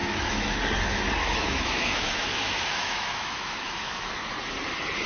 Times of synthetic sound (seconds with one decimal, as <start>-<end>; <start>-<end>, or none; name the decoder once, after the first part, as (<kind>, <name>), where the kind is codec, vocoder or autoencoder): 0.0-0.6 (autoencoder, DAC-VAE); 1.2-4.3